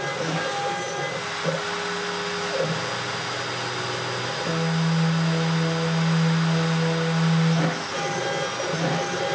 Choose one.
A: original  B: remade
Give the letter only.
A